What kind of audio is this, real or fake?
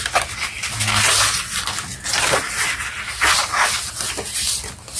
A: real